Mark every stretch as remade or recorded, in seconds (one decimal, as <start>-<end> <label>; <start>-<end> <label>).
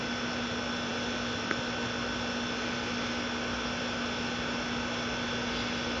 0.0-6.0 recorded